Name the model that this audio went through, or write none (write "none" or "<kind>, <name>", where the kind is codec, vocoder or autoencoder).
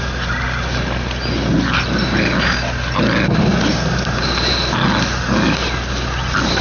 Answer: none